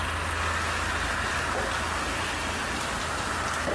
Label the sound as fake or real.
real